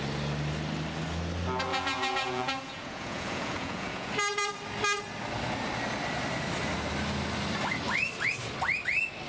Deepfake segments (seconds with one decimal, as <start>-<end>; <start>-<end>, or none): 1.7-4.1